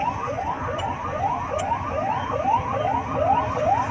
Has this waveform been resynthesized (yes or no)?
no